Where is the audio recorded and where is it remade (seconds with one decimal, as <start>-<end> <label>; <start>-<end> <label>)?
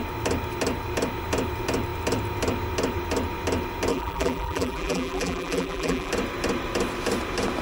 0.0-3.9 recorded; 3.9-6.1 remade; 6.1-7.6 recorded